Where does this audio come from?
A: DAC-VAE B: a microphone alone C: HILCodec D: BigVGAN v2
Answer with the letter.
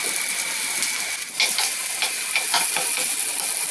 B